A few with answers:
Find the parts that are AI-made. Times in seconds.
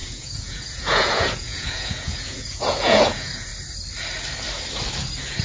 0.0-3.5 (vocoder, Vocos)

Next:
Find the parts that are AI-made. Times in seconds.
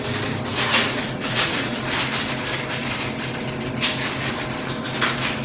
0.5-1.8 (vocoder, Vocos)